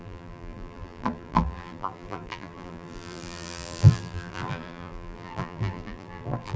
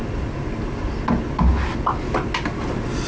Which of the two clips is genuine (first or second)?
second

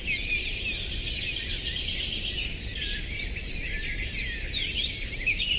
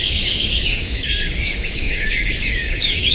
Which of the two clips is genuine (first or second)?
first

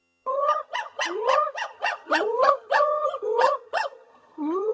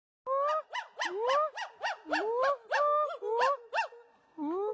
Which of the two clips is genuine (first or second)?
second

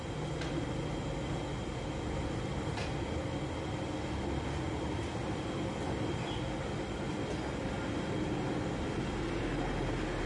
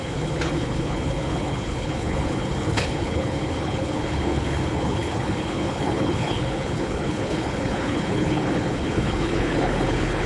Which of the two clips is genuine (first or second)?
first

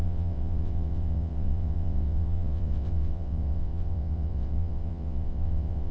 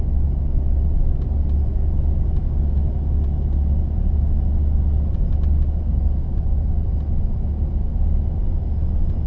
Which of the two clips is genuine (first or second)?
second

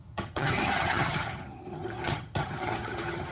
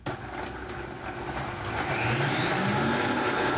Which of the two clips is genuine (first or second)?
second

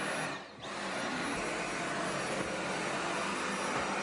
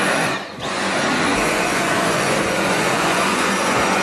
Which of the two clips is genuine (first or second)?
first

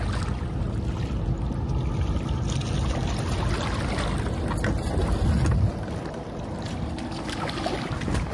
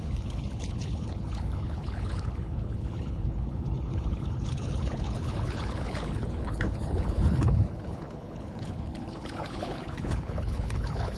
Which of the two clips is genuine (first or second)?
first